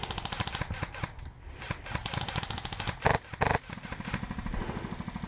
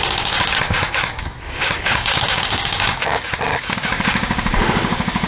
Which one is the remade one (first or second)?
second